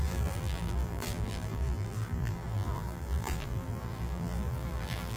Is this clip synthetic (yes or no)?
yes